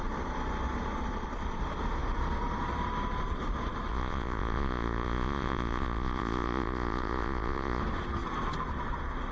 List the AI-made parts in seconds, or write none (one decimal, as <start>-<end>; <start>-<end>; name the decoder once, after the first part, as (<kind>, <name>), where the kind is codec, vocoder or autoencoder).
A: 3.9-7.8 (vocoder, Vocos)